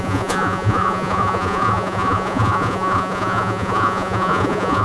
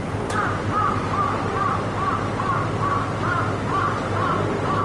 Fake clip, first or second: first